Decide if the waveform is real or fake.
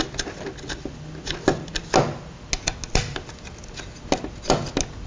real